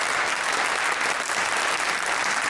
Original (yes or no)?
yes